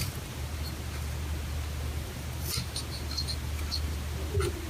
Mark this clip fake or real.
real